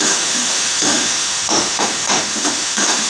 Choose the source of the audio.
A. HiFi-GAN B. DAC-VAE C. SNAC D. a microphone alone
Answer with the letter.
B